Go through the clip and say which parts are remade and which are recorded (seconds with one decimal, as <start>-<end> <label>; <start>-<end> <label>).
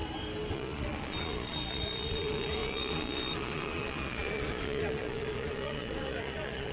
0.0-0.5 recorded; 0.5-6.7 remade